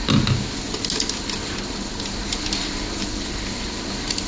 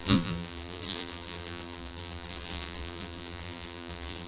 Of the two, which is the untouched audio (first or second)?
first